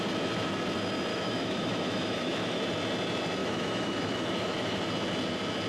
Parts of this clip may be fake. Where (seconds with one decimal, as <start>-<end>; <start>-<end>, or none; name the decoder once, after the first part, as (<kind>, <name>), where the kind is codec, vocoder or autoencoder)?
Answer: 1.1-2.6 (autoencoder, DAC-VAE); 3.4-4.9